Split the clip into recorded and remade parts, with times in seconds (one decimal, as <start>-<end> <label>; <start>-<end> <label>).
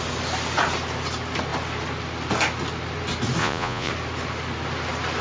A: 0.0-3.4 recorded; 3.4-3.9 remade; 3.9-5.2 recorded